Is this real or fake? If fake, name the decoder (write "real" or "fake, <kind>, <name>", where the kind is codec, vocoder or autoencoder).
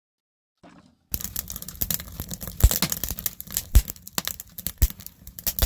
real